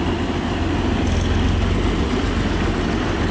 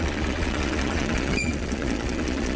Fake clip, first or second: second